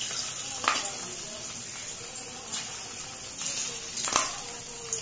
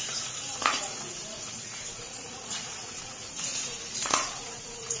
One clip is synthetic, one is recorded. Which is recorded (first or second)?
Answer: first